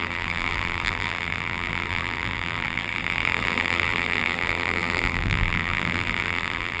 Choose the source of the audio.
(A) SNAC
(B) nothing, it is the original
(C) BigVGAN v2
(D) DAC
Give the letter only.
C